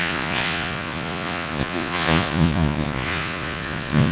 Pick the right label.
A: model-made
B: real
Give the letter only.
A